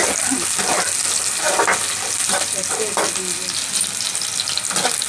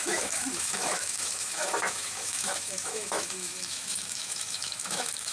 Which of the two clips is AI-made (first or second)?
second